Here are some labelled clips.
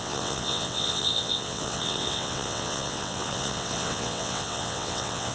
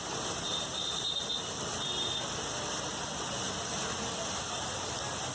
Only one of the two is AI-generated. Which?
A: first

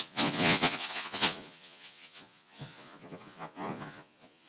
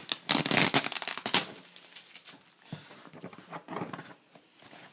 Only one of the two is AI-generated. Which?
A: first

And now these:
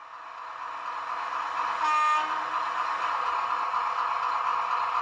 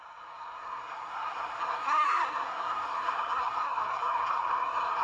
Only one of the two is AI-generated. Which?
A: second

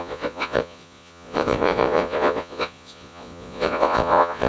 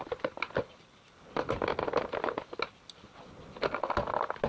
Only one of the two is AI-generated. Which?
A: first